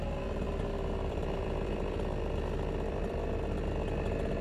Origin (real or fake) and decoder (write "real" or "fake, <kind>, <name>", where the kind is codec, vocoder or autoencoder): fake, vocoder, BigVGAN v2